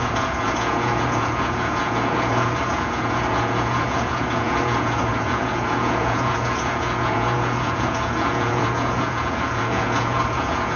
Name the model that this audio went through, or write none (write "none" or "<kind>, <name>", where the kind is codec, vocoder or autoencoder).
vocoder, Vocos